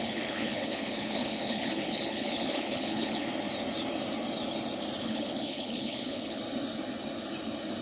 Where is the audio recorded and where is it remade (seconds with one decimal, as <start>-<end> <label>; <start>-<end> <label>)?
0.0-3.2 remade; 3.2-5.0 recorded; 5.0-6.4 remade; 6.4-7.8 recorded